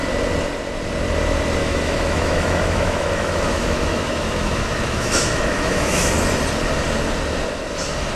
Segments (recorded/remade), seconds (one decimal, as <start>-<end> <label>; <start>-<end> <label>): 0.0-1.6 recorded; 1.6-6.1 remade; 6.1-8.2 recorded